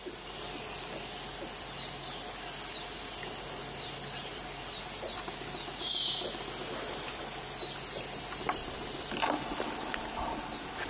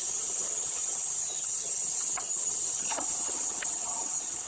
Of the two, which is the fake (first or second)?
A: second